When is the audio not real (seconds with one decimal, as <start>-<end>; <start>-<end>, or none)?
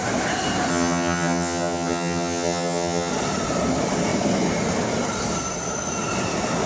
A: 0.7-3.1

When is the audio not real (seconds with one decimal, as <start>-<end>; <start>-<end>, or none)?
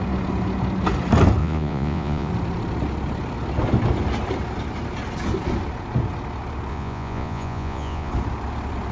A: 1.4-2.3; 6.7-8.1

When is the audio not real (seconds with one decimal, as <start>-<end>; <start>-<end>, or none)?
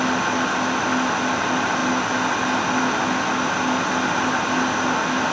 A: none